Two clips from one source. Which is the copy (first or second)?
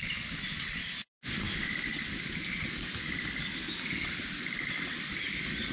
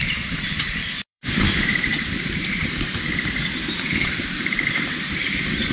second